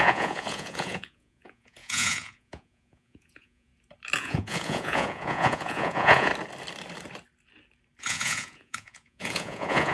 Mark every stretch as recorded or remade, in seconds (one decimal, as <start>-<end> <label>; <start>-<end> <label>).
0.0-3.7 remade; 3.7-4.2 recorded; 4.2-6.3 remade; 6.3-8.0 recorded; 8.0-9.9 remade